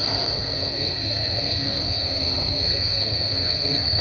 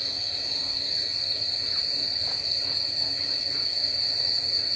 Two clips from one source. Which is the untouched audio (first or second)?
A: second